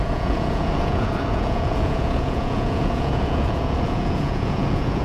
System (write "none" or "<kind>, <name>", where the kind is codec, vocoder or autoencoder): vocoder, Vocos